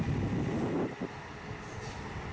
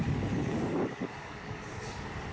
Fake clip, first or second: second